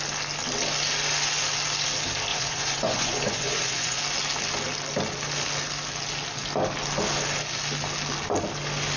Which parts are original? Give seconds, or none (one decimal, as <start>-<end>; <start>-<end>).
0.0-2.3; 4.0-9.0